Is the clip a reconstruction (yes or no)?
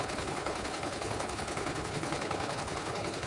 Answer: yes